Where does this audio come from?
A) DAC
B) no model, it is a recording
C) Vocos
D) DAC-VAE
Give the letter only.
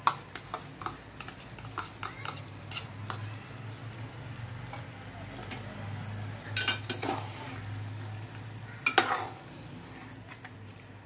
B